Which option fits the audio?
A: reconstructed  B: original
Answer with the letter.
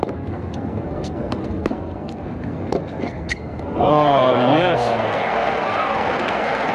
A